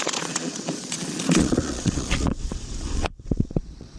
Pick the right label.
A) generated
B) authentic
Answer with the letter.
A